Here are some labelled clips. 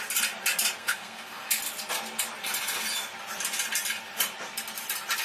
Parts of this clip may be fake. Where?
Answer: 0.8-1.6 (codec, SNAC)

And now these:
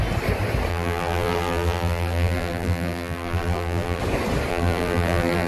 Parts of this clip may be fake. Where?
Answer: 0.7-4.0 (vocoder, BigVGAN v2); 4.5-5.5

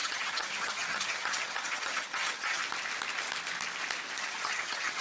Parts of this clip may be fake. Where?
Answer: 0.0-2.6 (vocoder, HiFi-GAN); 4.2-5.0

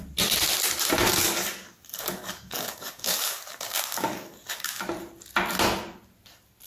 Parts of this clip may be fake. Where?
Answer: 1.2-4.8 (codec, DAC)